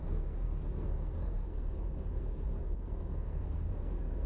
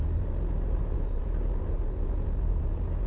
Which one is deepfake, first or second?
first